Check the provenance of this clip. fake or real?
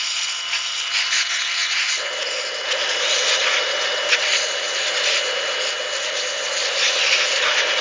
real